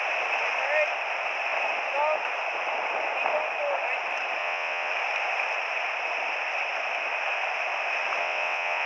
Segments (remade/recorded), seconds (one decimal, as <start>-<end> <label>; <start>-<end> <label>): 0.0-4.4 recorded; 4.4-4.9 remade; 4.9-8.2 recorded; 8.2-8.9 remade